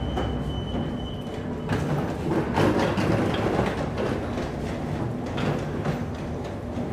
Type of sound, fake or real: real